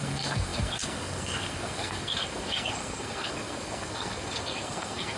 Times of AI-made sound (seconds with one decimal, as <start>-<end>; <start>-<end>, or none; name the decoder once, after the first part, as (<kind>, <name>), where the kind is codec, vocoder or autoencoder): 0.0-5.2 (codec, SNAC)